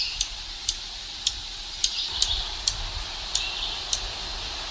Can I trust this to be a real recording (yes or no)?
yes